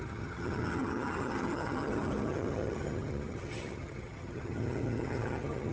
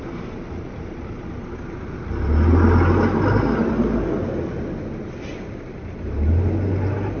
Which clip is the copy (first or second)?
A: first